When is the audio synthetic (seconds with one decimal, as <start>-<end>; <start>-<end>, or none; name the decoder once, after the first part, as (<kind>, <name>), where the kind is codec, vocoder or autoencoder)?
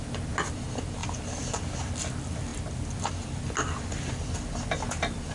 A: none